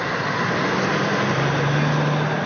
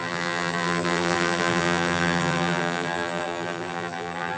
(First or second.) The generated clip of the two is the second